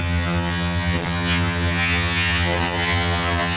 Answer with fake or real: fake